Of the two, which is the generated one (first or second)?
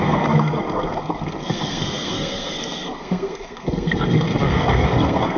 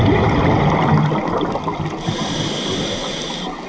first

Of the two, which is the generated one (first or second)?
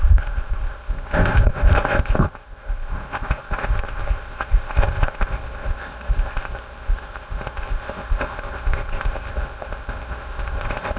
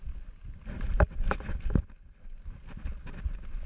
first